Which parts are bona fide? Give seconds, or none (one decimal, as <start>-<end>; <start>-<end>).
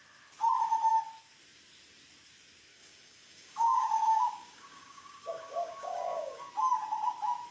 0.0-2.7; 6.5-7.5